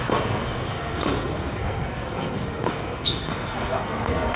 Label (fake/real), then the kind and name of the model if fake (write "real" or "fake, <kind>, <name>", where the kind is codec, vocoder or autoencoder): fake, codec, SNAC